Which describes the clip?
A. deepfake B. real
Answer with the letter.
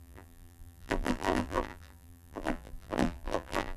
A